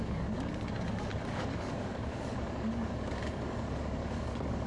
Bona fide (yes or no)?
no